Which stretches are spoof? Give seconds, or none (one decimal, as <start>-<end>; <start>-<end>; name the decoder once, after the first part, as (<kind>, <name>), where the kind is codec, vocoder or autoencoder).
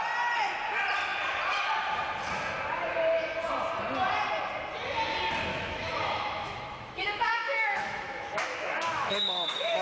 5.5-9.8 (autoencoder, DAC-VAE)